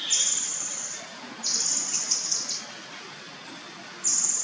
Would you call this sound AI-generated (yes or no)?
no